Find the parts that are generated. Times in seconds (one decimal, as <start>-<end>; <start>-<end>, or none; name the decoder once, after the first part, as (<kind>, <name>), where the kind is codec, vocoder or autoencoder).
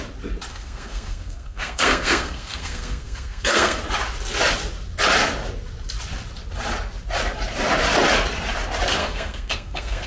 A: 0.5-3.8 (codec, SNAC); 9.0-10.1